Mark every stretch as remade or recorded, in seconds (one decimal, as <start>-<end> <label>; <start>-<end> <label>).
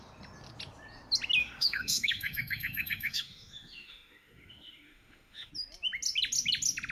0.0-1.4 recorded; 1.4-5.5 remade; 5.5-6.9 recorded